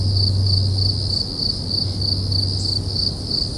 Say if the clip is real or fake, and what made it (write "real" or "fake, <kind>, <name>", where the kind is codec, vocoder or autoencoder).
real